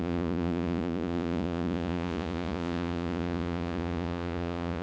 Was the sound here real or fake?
fake